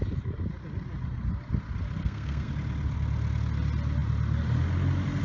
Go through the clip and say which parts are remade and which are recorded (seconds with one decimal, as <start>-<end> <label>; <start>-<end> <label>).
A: 0.0-2.0 recorded; 2.0-2.5 remade; 2.5-5.2 recorded